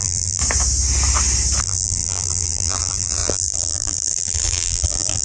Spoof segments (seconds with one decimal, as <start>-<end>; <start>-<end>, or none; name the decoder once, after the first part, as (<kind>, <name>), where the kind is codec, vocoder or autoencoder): 0.0-0.4 (vocoder, BigVGAN v2); 1.6-5.2